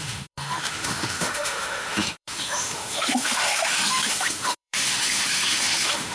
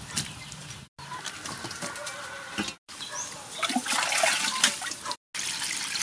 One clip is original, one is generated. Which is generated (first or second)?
first